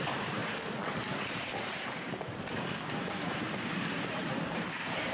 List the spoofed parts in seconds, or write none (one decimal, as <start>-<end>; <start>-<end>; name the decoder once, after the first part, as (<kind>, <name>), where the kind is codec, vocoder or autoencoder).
0.0-0.4 (vocoder, BigVGAN v2); 1.3-5.1